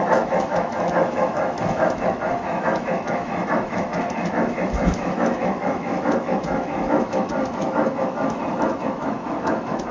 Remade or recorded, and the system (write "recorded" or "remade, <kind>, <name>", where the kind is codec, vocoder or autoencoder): remade, autoencoder, DAC-VAE